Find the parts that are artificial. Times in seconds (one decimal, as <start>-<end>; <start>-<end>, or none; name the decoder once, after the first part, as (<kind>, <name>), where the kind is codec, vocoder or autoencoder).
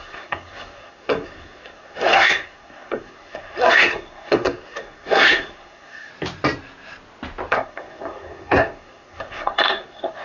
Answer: 0.0-6.1 (codec, SNAC); 7.5-10.2